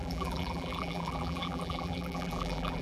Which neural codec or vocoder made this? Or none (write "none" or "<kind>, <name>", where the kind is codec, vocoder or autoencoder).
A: vocoder, BigVGAN v2